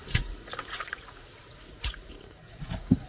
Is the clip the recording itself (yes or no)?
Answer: no